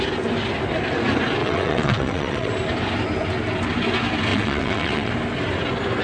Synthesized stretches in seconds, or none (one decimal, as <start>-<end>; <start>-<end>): 1.4-2.5; 4.3-5.1